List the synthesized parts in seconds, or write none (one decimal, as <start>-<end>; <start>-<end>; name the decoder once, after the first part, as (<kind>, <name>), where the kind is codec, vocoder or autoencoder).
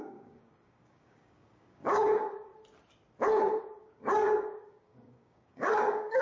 0.0-2.5 (codec, DAC); 3.6-6.2